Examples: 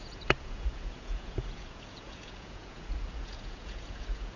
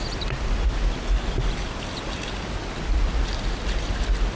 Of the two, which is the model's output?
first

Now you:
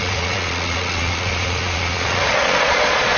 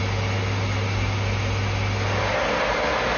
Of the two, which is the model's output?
first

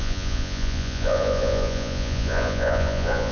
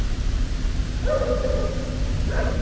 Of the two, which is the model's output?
first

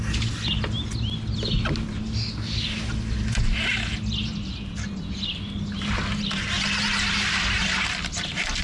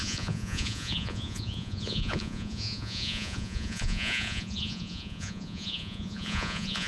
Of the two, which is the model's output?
second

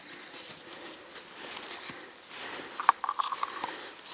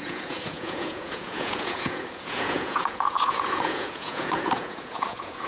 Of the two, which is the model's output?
second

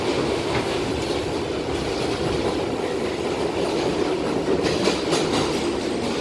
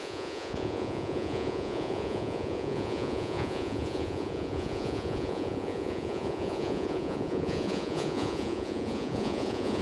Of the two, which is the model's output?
second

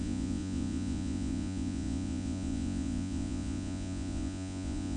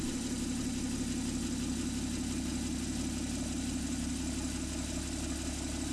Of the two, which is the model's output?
first